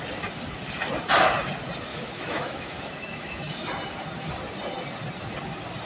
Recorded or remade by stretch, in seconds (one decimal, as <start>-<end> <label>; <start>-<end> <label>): 0.0-1.9 recorded; 1.9-3.7 remade; 3.7-5.9 recorded